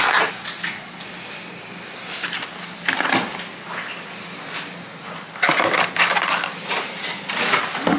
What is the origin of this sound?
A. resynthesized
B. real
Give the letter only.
B